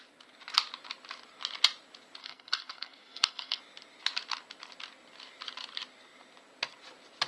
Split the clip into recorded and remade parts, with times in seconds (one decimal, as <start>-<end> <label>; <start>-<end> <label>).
0.0-2.2 recorded; 2.2-3.6 remade; 3.6-7.3 recorded